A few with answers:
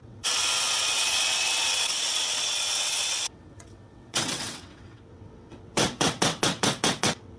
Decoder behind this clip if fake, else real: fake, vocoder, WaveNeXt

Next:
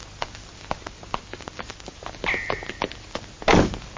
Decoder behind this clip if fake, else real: real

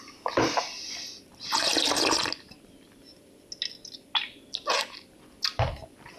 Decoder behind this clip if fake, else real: real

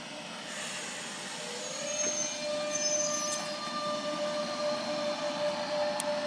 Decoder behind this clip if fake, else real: real